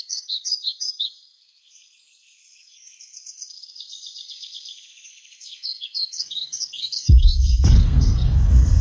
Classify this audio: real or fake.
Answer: fake